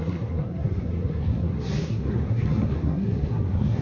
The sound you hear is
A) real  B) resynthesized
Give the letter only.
B